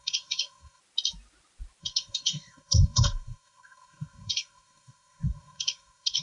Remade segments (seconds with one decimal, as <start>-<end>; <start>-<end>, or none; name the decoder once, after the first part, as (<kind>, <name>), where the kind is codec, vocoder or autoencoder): 0.0-0.8 (codec, SNAC); 1.8-6.2